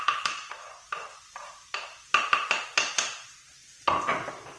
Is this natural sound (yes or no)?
yes